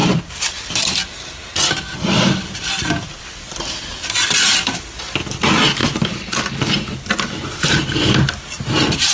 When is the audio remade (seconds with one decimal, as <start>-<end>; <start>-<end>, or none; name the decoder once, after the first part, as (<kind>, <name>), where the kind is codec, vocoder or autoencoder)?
0.0-4.8 (vocoder, BigVGAN v2)